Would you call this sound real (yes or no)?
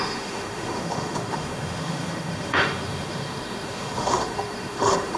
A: no